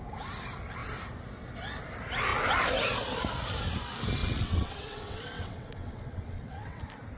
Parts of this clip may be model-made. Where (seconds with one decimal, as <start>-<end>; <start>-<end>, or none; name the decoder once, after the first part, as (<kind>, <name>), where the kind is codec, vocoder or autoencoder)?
4.2-6.8 (vocoder, WaveNeXt)